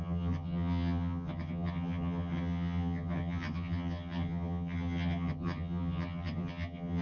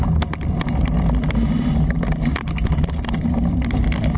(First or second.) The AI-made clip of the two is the first